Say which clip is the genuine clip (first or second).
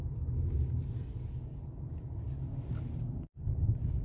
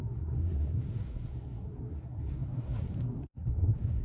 first